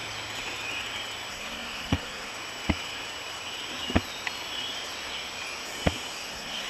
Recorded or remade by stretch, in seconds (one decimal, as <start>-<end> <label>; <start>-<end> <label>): 0.0-1.3 recorded; 1.3-2.3 remade; 2.3-6.3 recorded; 6.3-6.7 remade